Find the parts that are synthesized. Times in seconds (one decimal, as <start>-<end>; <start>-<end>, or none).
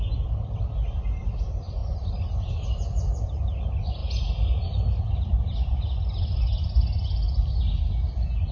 none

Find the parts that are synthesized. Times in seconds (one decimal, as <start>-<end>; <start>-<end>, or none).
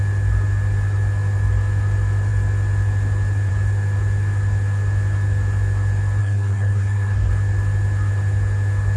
6.2-7.3